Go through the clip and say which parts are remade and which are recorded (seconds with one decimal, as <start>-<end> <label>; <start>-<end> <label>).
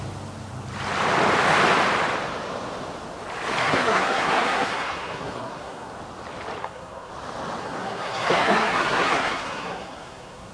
0.0-3.6 recorded; 3.6-5.9 remade; 5.9-6.6 recorded; 6.6-7.1 remade; 7.1-7.6 recorded; 7.6-10.5 remade